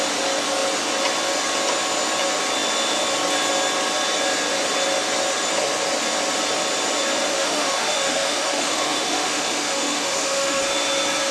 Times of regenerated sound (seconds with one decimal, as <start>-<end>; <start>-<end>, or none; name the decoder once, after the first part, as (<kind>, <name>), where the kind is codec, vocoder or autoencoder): 7.3-10.6 (autoencoder, DAC-VAE)